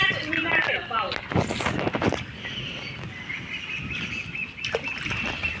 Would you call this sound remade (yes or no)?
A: no